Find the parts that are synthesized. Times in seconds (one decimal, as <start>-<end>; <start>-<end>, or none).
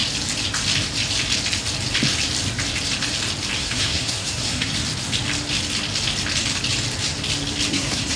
3.6-4.7; 7.7-8.2